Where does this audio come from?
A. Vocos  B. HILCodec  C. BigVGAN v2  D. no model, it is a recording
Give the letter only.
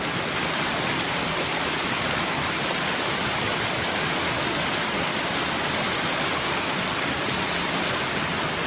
D